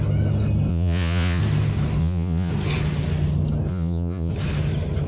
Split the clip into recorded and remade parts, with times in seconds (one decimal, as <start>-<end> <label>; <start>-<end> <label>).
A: 0.0-0.7 recorded; 0.7-1.4 remade; 1.4-2.0 recorded; 2.0-2.5 remade; 2.5-3.7 recorded; 3.7-4.3 remade; 4.3-5.1 recorded

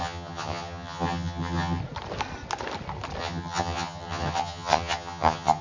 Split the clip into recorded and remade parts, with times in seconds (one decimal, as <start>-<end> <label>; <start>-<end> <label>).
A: 0.0-1.8 remade; 1.8-3.2 recorded; 3.2-5.6 remade

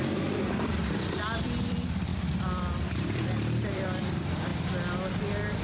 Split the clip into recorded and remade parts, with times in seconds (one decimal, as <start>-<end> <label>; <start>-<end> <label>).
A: 0.0-4.5 remade; 4.5-5.6 recorded